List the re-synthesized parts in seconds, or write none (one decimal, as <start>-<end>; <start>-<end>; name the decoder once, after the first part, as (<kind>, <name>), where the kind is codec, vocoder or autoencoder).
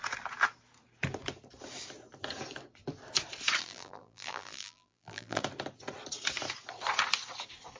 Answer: 3.6-5.4 (vocoder, BigVGAN v2)